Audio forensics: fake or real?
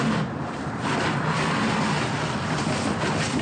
real